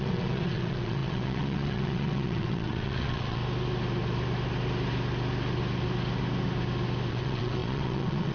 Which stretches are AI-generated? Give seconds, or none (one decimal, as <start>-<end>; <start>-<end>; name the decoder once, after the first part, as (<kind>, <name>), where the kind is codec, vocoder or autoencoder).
0.0-3.4 (vocoder, WaveNeXt); 7.1-8.3